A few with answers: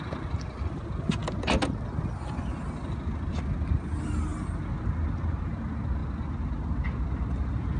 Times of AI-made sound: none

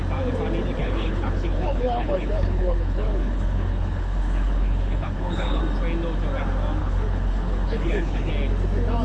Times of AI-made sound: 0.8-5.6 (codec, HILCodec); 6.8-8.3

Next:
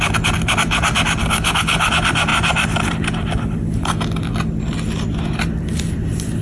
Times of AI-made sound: 1.2-1.9 (codec, HILCodec)

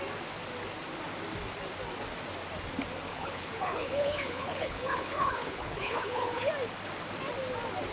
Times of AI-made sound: 3.1-6.5 (codec, HILCodec)